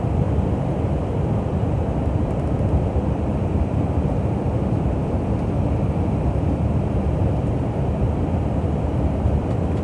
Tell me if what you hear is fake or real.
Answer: fake